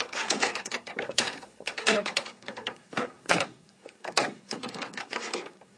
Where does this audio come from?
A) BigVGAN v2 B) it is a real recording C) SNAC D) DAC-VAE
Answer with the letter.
C